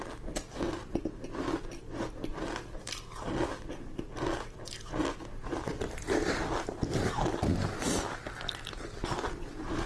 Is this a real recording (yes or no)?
yes